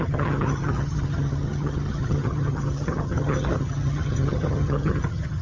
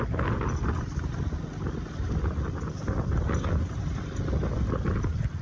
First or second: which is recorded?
second